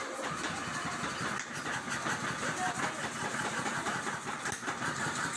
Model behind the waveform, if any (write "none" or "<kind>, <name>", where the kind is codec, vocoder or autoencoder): none